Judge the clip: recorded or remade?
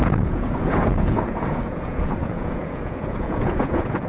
remade